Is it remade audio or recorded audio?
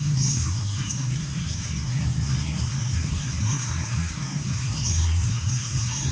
remade